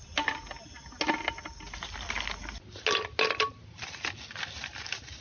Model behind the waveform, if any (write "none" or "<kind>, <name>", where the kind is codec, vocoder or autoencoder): none